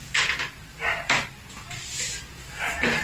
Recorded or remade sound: recorded